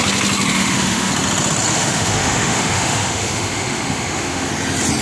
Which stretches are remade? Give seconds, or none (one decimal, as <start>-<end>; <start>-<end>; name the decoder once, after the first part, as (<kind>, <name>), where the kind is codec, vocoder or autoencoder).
0.5-1.1 (autoencoder, DAC-VAE); 1.7-4.5